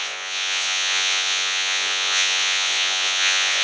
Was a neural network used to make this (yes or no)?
yes